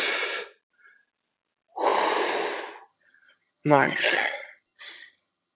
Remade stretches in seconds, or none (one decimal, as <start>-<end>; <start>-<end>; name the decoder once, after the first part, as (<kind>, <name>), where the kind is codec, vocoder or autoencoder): 2.9-5.6 (vocoder, HiFi-GAN)